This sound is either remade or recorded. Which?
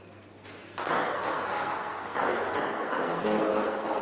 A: remade